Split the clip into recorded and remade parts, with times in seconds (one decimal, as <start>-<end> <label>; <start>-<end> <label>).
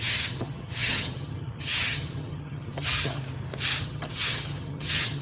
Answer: 0.0-3.2 remade; 3.2-3.8 recorded; 3.8-5.2 remade